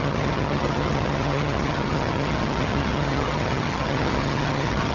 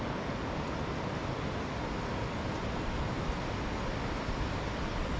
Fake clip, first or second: first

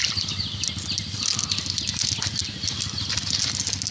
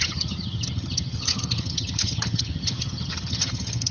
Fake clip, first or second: second